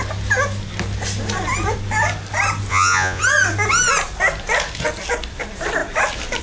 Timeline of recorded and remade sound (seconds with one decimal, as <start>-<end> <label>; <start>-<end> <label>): 0.0-2.7 recorded; 2.7-3.2 remade; 3.2-6.4 recorded